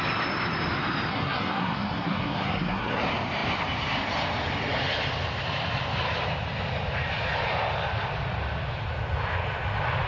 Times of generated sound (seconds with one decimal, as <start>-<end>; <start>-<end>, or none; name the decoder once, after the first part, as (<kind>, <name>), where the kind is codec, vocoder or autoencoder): 1.1-3.0 (codec, SNAC)